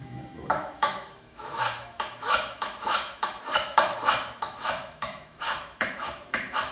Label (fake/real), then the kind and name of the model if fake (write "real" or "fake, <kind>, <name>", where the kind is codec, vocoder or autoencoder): fake, autoencoder, DAC-VAE